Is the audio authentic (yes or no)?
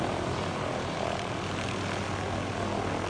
yes